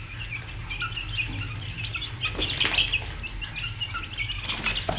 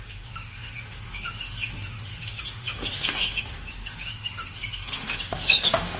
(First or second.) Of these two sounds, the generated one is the second